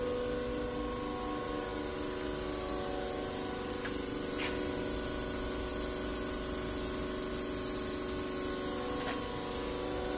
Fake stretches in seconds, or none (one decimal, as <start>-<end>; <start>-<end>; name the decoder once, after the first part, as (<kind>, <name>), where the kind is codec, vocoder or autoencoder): none